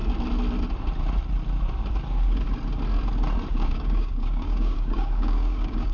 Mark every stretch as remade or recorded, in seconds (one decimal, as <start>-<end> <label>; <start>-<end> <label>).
0.0-3.5 recorded; 3.5-5.9 remade